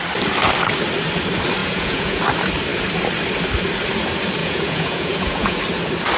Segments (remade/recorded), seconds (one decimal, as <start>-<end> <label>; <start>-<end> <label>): 0.0-1.6 recorded; 1.6-2.2 remade; 2.2-4.4 recorded; 4.4-5.6 remade; 5.6-6.2 recorded